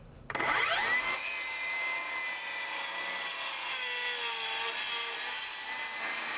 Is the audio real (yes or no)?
yes